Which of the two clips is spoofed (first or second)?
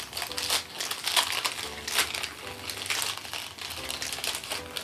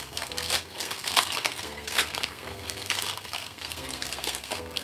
second